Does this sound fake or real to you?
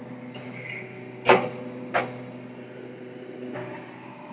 real